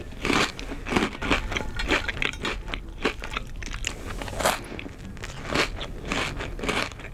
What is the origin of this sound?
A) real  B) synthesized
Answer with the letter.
A